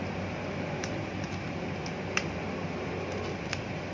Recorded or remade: recorded